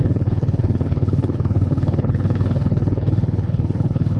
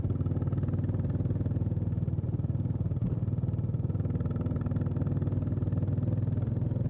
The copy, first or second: first